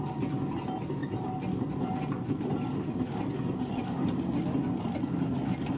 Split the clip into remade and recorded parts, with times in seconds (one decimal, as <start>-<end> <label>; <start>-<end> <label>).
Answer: 0.0-5.8 recorded